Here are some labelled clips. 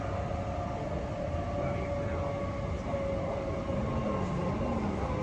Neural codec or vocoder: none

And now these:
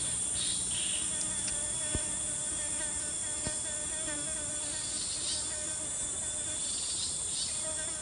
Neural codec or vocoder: none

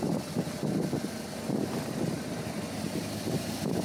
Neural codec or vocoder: none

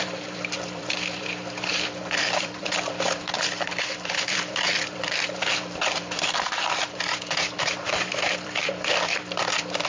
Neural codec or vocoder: vocoder, BigVGAN v2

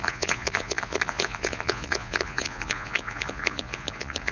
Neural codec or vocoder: vocoder, Vocos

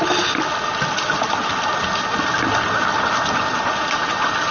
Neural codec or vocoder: none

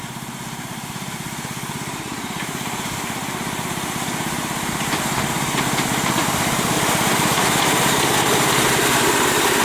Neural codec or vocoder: vocoder, BigVGAN v2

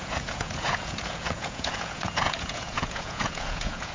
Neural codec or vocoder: vocoder, Vocos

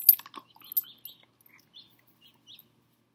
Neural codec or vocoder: none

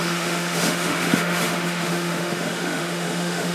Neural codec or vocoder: autoencoder, DAC-VAE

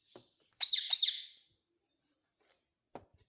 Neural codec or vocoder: vocoder, BigVGAN v2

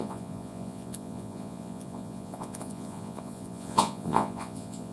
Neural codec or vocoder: vocoder, Vocos